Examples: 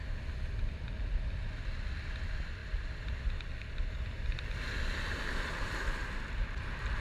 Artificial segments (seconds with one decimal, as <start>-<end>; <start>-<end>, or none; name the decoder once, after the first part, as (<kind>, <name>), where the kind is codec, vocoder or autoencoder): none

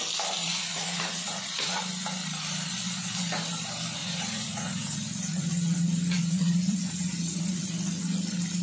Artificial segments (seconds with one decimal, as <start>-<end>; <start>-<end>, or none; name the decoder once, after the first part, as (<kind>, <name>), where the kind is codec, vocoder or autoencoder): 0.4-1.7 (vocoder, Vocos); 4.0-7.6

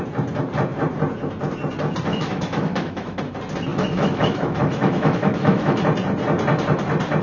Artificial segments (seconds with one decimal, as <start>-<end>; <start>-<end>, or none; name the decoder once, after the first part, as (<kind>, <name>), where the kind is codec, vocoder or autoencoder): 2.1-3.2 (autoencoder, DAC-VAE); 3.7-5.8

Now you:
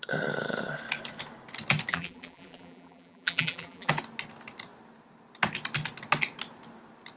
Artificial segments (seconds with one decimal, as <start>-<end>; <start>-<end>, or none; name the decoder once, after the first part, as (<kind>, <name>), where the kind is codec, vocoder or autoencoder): 1.9-3.9 (vocoder, BigVGAN v2)